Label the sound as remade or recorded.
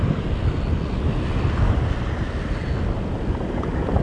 recorded